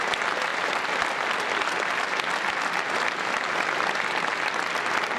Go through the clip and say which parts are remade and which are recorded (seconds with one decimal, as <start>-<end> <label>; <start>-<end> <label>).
0.0-5.2 recorded